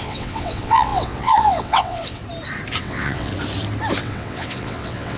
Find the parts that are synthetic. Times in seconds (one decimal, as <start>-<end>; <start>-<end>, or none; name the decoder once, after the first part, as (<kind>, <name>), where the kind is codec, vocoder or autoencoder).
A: 0.0-2.2 (vocoder, WaveNeXt); 2.8-3.3; 4.0-5.2